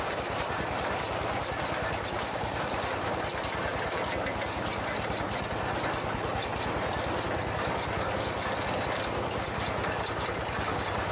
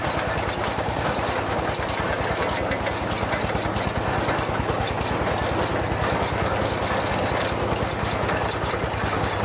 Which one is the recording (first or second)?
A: second